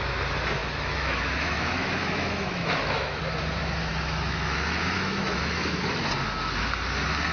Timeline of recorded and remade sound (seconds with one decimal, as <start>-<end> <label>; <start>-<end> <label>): 0.0-0.6 recorded; 0.6-3.2 remade; 3.2-3.9 recorded; 3.9-5.8 remade; 5.8-7.3 recorded